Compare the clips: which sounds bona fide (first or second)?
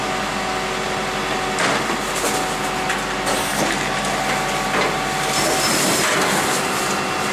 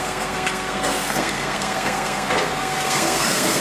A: first